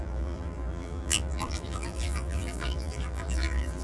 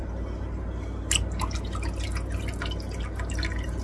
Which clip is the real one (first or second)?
second